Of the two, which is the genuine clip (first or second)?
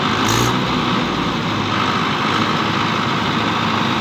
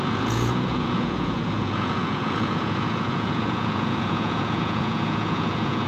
first